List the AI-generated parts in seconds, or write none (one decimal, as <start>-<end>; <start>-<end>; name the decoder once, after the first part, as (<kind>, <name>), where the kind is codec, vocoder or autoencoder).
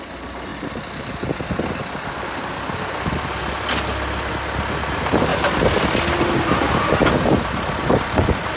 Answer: none